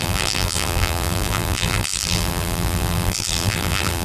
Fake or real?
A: fake